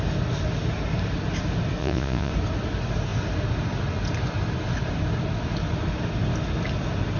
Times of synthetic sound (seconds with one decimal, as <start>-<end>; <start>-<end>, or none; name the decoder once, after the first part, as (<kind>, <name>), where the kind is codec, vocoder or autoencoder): 1.8-2.3 (vocoder, Vocos)